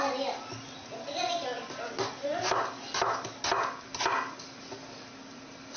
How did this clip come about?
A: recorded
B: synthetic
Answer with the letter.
A